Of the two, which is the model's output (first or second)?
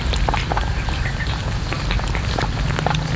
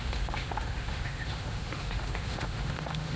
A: second